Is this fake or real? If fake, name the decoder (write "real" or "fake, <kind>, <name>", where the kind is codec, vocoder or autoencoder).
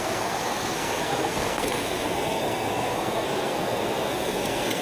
fake, codec, SNAC